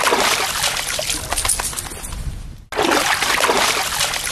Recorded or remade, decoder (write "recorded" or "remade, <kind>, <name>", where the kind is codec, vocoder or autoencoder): recorded